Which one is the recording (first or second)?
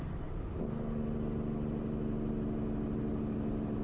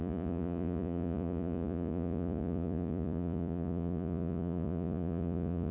first